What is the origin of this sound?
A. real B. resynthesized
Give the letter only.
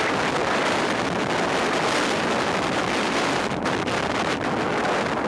A